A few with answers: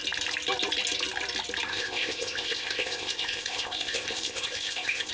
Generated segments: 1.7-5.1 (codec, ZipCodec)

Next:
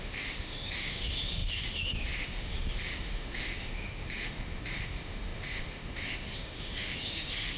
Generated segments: 0.0-7.6 (autoencoder, DAC-VAE)

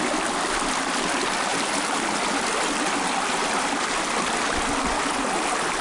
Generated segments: none